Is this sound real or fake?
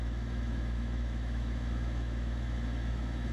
fake